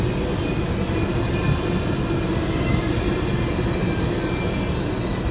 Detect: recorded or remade recorded